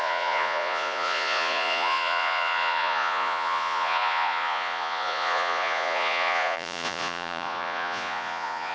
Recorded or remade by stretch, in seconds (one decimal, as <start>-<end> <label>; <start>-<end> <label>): 0.0-8.7 remade